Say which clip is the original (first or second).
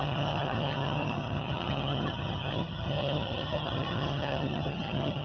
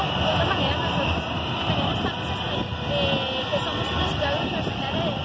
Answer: second